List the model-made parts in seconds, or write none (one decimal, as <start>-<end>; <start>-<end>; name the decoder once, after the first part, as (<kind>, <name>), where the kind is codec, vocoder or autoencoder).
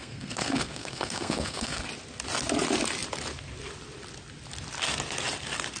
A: 0.0-1.8 (codec, SNAC)